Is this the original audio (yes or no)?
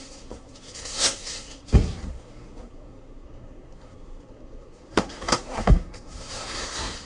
no